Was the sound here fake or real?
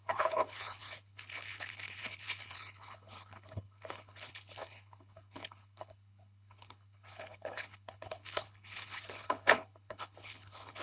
fake